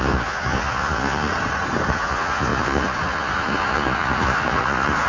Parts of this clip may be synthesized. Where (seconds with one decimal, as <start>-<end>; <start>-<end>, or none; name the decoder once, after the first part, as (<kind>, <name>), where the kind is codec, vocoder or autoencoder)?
0.0-1.3 (vocoder, Vocos); 1.9-5.1